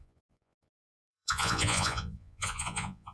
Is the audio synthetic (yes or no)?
yes